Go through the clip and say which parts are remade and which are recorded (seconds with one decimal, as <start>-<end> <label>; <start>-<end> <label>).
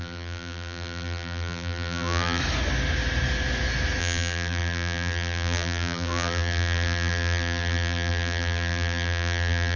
0.0-2.4 remade; 2.4-4.0 recorded; 4.0-9.8 remade